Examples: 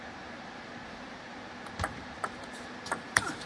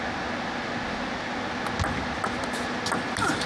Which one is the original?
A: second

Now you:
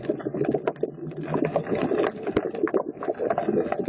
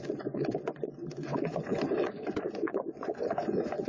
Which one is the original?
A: first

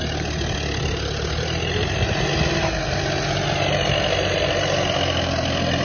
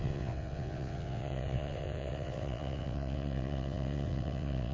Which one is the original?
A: first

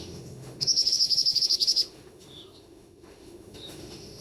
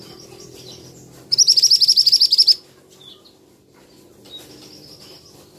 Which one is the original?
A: second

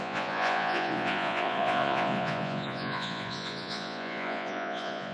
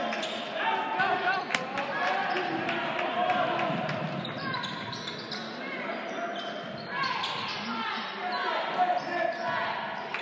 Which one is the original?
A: second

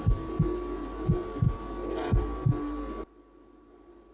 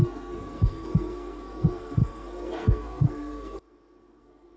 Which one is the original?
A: first